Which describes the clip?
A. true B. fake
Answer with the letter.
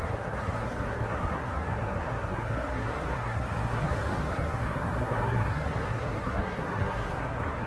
B